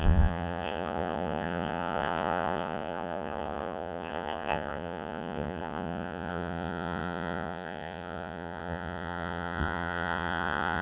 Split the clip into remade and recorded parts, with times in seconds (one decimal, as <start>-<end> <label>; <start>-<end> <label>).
0.0-10.8 remade